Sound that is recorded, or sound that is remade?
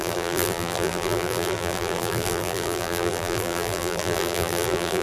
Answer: remade